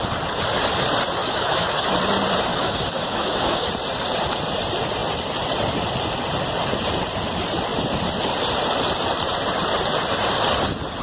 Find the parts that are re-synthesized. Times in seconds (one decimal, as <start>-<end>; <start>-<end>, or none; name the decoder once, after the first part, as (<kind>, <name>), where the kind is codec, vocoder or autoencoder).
1.2-1.9 (autoencoder, DAC-VAE); 2.5-3.7